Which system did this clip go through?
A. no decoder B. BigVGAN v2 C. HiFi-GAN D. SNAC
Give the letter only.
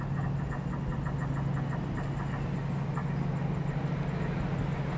A